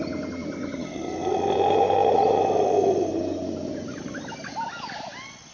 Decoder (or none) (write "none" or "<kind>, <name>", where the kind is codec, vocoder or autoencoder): none